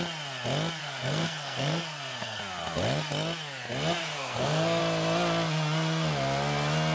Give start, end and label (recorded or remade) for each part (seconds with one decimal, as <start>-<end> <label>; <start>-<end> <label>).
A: 0.0-0.8 recorded; 0.8-2.4 remade; 2.4-4.0 recorded; 4.0-4.8 remade; 4.8-6.9 recorded